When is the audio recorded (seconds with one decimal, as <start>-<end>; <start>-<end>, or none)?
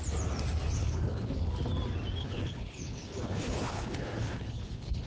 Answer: 0.0-0.8; 1.5-2.2